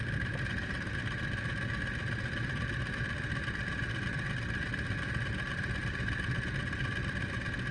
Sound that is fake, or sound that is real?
real